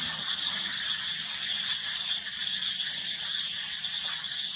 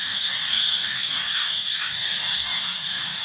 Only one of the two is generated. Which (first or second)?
second